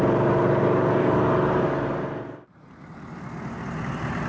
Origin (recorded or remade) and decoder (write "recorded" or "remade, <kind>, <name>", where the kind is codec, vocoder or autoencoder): recorded